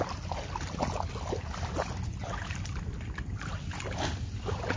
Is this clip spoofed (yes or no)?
no